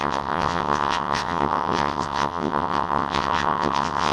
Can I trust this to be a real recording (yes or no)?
no